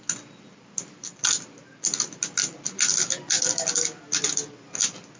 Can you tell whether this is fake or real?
real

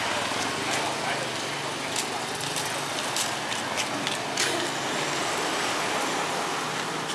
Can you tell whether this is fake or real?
real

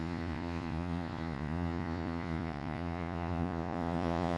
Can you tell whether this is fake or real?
fake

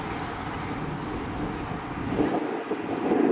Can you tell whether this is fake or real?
real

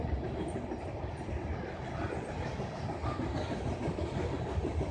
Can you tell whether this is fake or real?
real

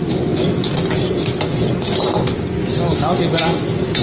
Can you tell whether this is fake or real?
real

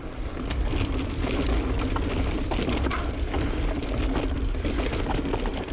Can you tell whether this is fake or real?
real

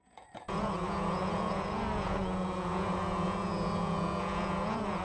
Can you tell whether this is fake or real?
fake